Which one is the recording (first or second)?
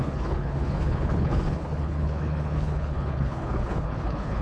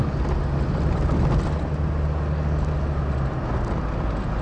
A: second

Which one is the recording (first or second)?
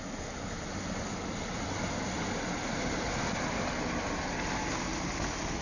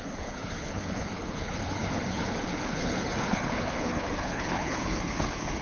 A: first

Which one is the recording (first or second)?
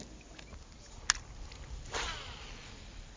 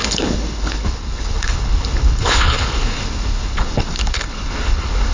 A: first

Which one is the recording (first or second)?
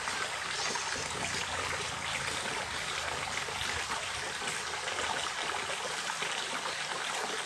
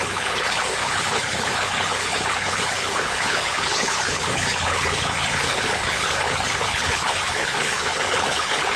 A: first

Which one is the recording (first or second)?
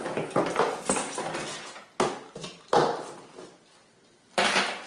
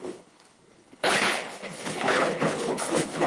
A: first